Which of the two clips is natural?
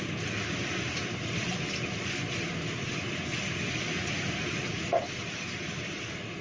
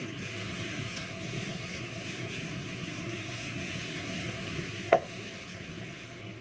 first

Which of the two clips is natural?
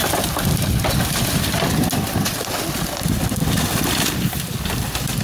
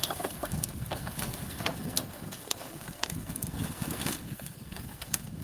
first